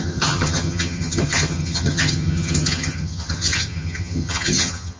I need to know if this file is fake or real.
fake